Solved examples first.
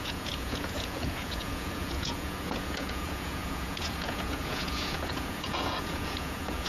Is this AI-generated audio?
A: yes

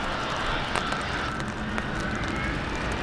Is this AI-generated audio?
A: no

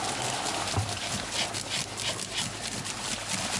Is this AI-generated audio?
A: no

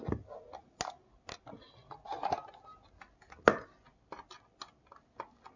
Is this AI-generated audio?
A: no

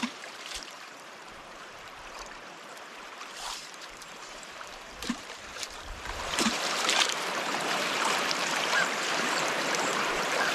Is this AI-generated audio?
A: yes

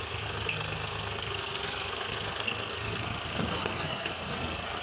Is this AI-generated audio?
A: yes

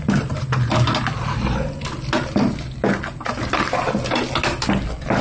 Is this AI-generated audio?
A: no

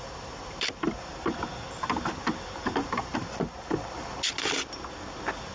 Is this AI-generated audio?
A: no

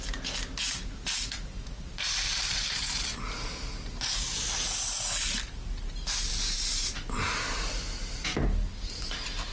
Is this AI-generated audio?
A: no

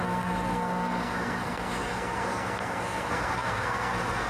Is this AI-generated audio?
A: yes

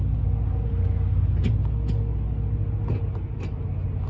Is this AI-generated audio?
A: no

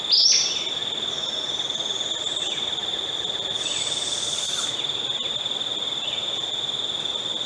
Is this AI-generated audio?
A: no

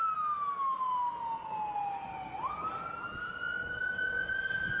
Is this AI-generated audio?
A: no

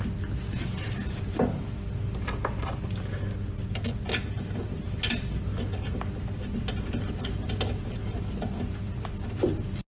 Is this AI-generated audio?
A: no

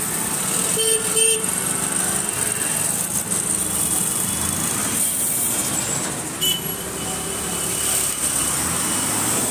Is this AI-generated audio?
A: no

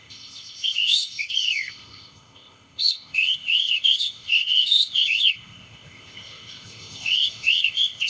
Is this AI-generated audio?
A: yes